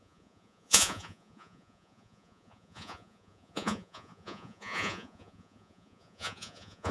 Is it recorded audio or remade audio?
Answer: remade